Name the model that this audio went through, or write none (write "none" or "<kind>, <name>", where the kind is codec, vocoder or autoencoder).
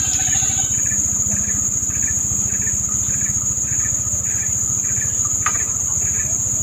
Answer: vocoder, BigVGAN v2